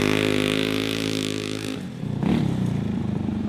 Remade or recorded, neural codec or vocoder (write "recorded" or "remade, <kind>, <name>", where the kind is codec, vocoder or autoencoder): recorded